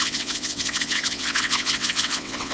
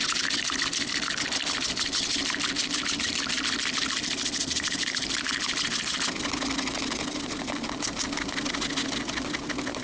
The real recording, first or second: second